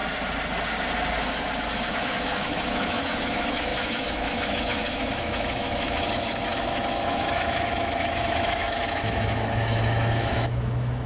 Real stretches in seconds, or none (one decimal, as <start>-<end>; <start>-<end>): 0.0-1.9